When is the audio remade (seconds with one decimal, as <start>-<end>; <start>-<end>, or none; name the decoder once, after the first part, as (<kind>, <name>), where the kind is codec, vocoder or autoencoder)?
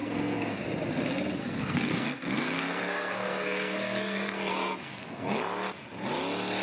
0.0-0.6 (codec, SNAC); 1.4-5.4